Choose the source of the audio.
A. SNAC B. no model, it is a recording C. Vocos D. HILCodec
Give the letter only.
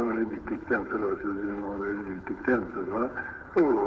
D